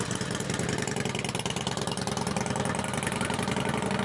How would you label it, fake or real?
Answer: real